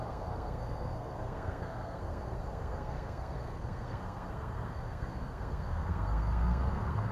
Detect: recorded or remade remade